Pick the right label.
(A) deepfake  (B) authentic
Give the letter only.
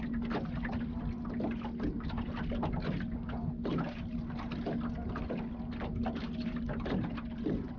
B